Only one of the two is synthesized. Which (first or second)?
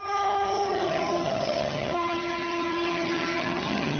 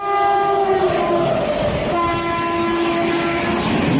first